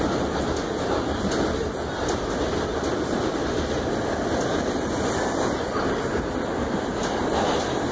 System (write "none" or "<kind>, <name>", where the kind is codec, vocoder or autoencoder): none